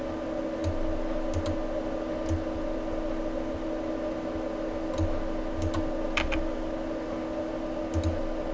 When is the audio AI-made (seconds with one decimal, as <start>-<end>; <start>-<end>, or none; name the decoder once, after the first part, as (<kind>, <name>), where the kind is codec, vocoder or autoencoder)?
none